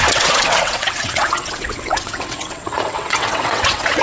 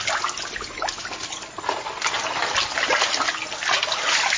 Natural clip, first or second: second